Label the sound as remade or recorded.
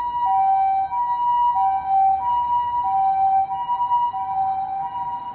recorded